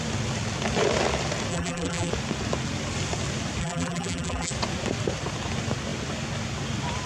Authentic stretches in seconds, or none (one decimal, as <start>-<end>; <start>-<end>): 0.0-1.5; 2.1-3.6; 4.5-7.1